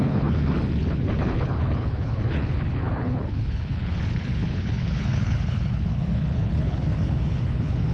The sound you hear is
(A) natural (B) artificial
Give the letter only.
B